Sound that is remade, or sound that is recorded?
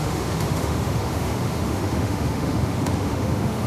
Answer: remade